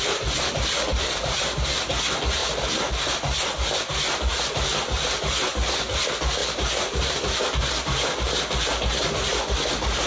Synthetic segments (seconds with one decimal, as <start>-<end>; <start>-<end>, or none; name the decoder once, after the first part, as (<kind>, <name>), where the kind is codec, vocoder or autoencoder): 0.9-1.4 (vocoder, BigVGAN v2); 6.4-7.2